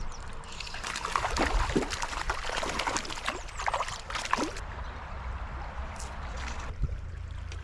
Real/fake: real